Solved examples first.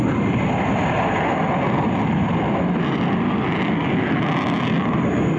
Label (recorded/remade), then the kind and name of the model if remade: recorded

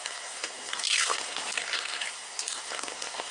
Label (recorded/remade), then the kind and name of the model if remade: remade, codec, SNAC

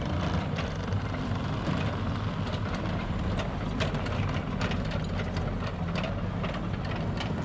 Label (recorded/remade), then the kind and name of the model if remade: recorded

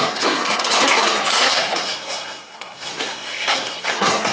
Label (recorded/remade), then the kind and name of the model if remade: remade, codec, SNAC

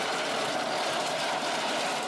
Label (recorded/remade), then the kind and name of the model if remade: recorded